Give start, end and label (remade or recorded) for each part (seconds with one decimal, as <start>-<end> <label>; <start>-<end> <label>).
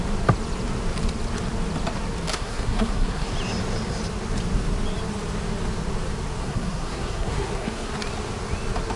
0.0-2.3 recorded; 2.3-3.3 remade; 3.3-6.4 recorded; 6.4-7.9 remade; 7.9-9.0 recorded